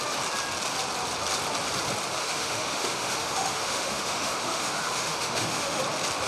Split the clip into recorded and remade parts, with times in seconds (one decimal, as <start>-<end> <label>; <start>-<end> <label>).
0.0-2.2 recorded; 2.2-5.8 remade; 5.8-6.3 recorded